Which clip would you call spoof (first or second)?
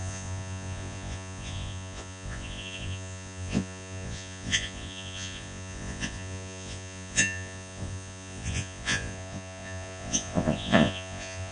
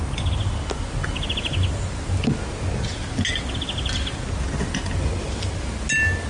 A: first